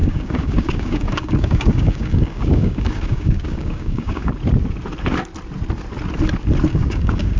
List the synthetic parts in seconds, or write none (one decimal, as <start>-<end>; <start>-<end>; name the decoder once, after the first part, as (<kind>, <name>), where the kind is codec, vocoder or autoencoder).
0.0-4.3 (codec, DAC); 6.7-7.4